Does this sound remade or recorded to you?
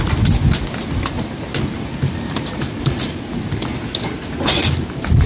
recorded